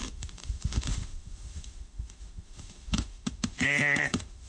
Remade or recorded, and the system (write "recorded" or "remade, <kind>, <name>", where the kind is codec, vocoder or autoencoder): remade, autoencoder, DAC-VAE